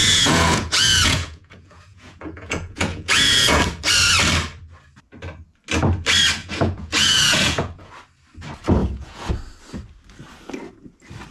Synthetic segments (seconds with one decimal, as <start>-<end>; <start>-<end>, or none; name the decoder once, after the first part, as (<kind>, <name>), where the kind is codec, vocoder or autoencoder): 0.0-3.6 (vocoder, Vocos); 6.4-7.9; 8.8-9.3